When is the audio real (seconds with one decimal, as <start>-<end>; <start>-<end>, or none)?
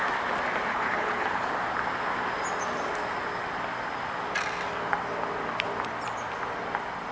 0.0-0.7; 1.5-7.1